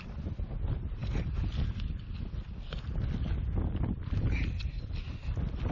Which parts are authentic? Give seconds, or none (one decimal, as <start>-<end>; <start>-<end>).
0.0-5.7

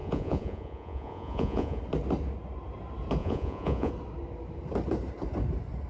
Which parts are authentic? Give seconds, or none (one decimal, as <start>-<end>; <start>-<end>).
1.8-3.2; 3.9-5.9

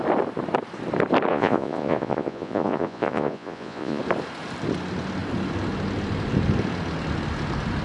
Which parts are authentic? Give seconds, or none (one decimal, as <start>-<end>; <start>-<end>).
0.0-1.3; 4.0-7.8

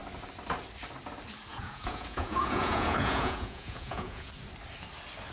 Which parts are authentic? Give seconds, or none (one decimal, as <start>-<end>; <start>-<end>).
0.0-1.5; 4.3-5.3

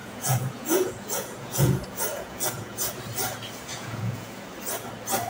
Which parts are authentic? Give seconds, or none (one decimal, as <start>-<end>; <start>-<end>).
2.9-3.7; 4.4-5.3

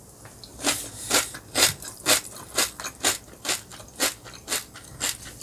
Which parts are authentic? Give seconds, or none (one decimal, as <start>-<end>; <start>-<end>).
0.0-5.4